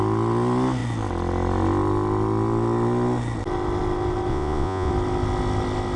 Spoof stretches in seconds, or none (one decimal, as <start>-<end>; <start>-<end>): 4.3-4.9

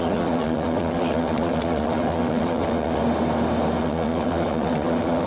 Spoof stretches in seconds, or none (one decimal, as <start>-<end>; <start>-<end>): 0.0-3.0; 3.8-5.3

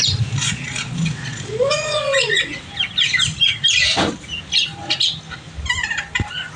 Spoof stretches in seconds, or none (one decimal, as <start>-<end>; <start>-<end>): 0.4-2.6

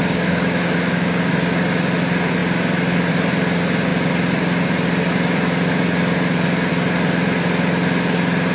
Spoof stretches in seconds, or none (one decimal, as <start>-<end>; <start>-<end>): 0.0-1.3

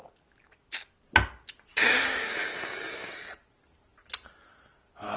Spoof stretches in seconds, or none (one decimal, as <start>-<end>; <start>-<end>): 1.7-3.1

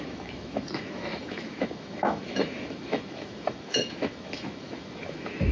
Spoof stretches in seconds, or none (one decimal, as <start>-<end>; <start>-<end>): 0.0-5.5

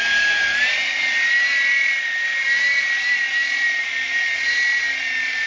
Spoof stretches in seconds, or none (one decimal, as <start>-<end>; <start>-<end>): none